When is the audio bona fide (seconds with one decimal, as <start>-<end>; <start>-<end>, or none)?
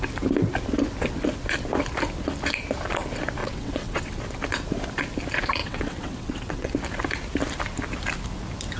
0.0-3.4; 4.2-5.6; 6.7-8.8